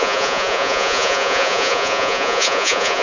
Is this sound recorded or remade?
remade